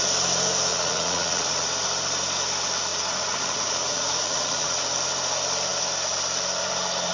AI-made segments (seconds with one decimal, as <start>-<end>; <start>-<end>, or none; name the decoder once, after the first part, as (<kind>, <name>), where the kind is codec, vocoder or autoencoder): 0.7-1.7 (vocoder, Vocos); 2.9-4.8